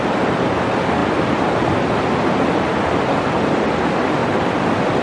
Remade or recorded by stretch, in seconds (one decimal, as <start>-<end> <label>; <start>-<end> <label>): 0.0-1.0 remade; 1.0-2.8 recorded; 2.8-5.0 remade